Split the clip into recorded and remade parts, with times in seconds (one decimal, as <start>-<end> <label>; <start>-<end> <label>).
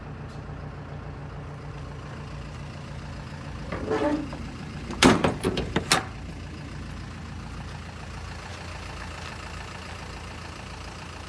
0.0-4.3 recorded; 4.3-5.9 remade; 5.9-11.3 recorded